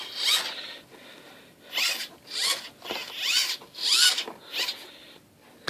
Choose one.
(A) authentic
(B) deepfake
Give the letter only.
A